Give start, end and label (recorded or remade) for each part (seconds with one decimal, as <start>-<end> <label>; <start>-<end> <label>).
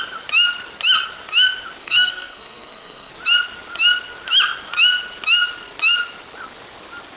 0.0-1.8 recorded; 1.8-3.1 remade; 3.1-7.2 recorded